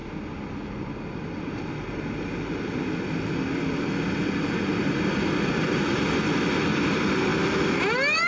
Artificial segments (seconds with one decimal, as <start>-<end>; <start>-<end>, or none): 4.9-7.3; 7.8-8.3